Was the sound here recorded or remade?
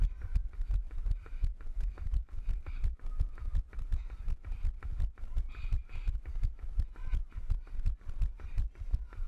recorded